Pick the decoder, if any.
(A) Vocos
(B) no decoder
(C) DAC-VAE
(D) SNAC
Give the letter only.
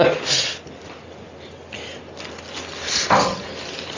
B